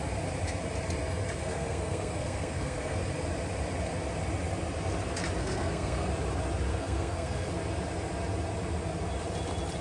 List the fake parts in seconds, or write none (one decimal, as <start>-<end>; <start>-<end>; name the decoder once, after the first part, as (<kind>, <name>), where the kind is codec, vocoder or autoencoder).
1.4-3.0 (codec, SNAC); 5.4-6.1; 6.7-7.5